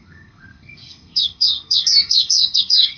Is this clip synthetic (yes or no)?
yes